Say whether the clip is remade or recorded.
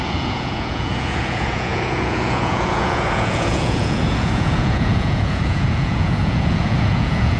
remade